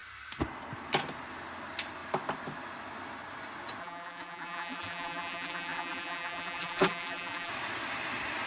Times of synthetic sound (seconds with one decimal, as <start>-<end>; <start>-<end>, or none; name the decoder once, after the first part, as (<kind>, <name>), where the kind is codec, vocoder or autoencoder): 3.8-7.5 (vocoder, BigVGAN v2)